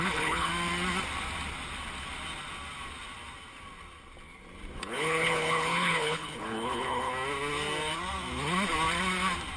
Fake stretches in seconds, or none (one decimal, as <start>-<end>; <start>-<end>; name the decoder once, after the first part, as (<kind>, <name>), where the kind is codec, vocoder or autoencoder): 0.0-0.5 (codec, HILCodec); 4.8-7.1